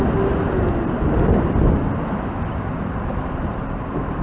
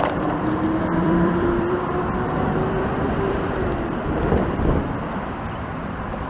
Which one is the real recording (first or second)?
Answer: first